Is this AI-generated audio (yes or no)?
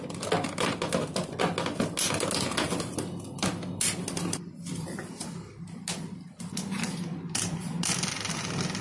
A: no